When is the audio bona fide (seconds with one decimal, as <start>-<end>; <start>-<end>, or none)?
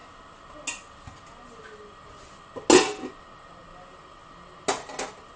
0.0-5.4